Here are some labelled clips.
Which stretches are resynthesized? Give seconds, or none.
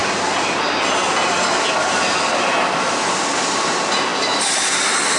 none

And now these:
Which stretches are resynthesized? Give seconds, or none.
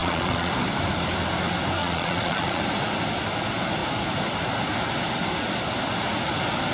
0.0-0.5 (vocoder, Vocos); 1.8-2.6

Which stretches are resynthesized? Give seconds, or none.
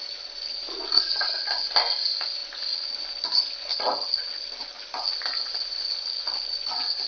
none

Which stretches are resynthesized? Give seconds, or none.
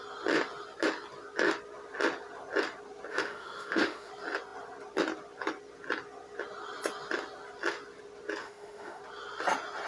3.1-4.1 (autoencoder, DAC-VAE); 8.4-9.0